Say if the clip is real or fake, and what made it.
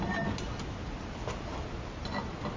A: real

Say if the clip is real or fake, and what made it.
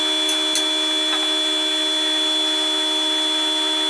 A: real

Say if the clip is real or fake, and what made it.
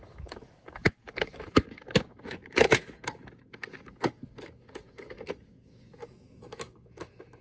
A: fake, autoencoder, DAC-VAE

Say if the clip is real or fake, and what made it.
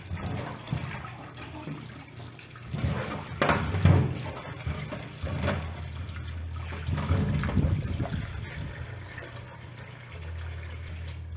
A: real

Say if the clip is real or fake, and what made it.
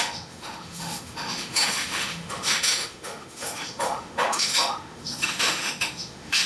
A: fake, autoencoder, DAC-VAE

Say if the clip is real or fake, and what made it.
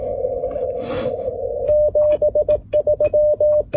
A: real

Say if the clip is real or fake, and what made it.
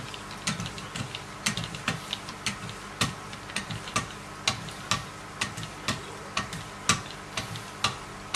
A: real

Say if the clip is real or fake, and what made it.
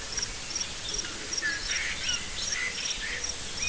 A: real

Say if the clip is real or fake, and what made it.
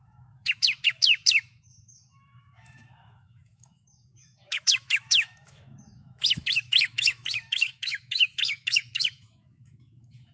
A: fake, autoencoder, DAC-VAE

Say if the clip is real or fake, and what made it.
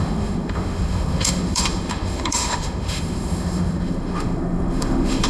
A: fake, autoencoder, DAC-VAE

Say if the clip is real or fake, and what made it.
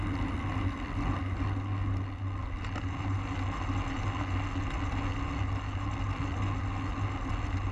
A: real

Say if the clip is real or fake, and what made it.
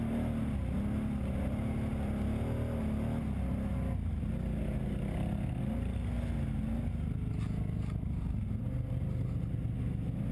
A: real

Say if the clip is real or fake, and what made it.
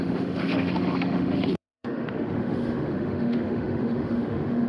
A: fake, autoencoder, DAC-VAE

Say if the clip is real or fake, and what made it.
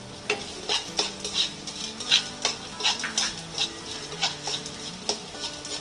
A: real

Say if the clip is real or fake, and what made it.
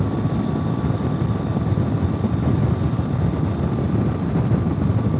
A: real